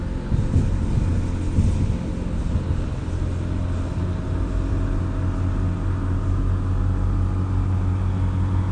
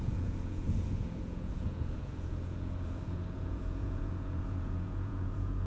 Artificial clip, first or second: second